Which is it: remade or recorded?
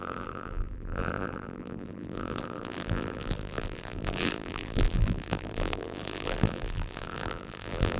remade